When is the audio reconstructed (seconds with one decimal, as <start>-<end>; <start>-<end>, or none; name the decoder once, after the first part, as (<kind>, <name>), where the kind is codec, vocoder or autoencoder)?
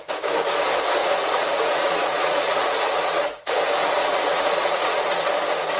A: 1.0-3.6 (vocoder, Vocos); 4.0-5.2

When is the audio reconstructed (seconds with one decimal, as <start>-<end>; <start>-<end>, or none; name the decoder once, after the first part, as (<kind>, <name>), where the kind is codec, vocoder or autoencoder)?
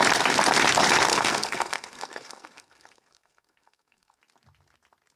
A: 1.1-4.2 (codec, SNAC)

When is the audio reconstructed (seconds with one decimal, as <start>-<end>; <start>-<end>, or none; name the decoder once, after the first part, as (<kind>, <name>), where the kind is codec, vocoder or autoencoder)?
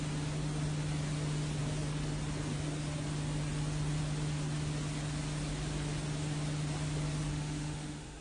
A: 7.3-8.2 (autoencoder, DAC-VAE)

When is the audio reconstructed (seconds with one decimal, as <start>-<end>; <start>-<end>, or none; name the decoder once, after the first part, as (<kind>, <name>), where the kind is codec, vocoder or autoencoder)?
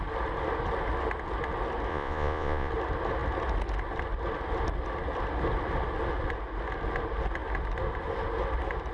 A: 1.9-2.7 (vocoder, Vocos)